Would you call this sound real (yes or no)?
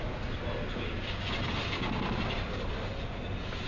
yes